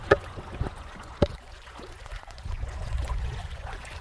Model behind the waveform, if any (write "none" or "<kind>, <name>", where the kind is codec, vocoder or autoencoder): vocoder, Vocos